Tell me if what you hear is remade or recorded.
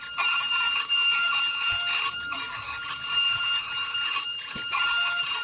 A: remade